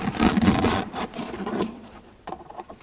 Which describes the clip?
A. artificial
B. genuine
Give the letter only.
A